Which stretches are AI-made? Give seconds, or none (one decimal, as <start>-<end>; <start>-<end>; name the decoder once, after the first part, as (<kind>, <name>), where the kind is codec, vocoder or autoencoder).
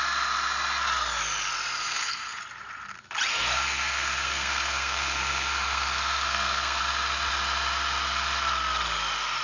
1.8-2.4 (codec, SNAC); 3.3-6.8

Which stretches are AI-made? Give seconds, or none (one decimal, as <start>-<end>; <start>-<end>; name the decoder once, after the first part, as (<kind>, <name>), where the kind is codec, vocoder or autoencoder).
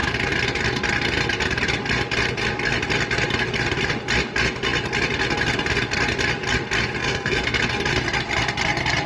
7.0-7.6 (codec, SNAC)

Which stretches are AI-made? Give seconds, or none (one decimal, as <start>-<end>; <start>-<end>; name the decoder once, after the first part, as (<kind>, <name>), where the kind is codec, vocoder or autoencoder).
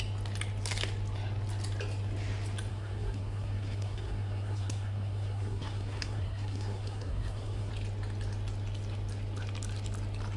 2.7-7.7 (codec, SNAC)